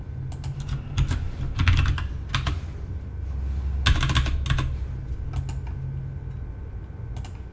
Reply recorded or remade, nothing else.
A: recorded